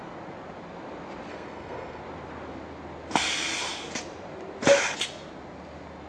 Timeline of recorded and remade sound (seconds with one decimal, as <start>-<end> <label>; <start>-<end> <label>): 0.0-1.3 recorded; 1.3-2.0 remade; 2.0-6.1 recorded

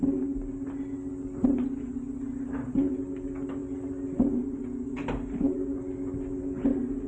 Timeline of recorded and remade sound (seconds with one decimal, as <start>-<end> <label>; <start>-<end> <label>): 0.0-7.1 recorded

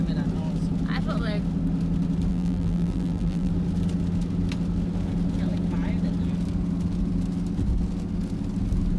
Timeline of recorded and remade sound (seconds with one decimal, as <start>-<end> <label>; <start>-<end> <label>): 0.0-2.3 recorded; 2.3-3.5 remade; 3.5-9.0 recorded

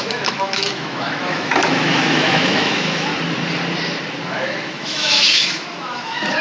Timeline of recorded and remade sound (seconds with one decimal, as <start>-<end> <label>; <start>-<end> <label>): 0.0-3.1 remade; 3.1-4.3 recorded; 4.3-6.4 remade